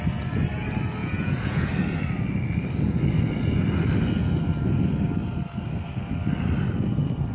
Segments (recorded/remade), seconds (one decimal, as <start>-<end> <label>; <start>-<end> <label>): 0.0-1.0 recorded; 1.0-1.7 remade; 1.7-7.3 recorded